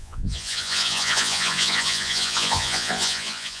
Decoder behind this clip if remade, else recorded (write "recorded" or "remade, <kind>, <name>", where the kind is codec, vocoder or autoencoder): remade, vocoder, Vocos